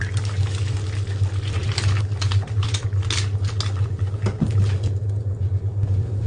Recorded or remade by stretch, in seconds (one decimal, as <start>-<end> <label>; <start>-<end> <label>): 0.0-6.3 recorded